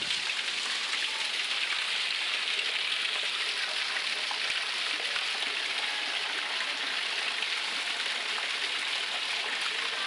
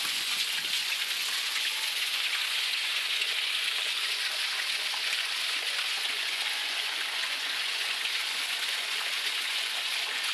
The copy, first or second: second